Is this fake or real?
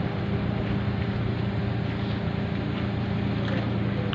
real